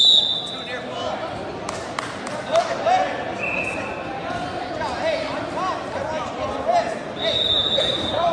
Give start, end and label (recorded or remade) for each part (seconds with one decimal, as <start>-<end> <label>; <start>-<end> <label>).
0.0-4.2 recorded; 4.2-4.7 remade; 4.7-8.3 recorded